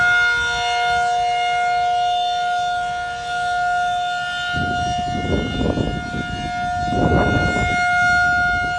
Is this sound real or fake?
real